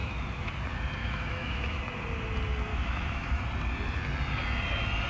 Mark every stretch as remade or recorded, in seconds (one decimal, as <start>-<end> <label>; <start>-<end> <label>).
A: 0.0-0.5 remade; 0.5-1.0 recorded; 1.0-1.8 remade; 1.8-2.7 recorded; 2.7-3.4 remade; 3.4-5.1 recorded